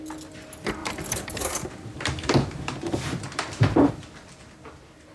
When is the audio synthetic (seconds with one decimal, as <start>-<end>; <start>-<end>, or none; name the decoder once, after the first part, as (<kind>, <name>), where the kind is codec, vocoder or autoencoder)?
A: 0.8-3.9 (vocoder, BigVGAN v2)